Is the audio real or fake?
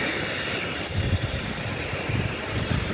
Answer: real